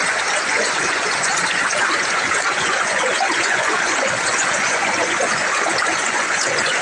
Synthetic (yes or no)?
yes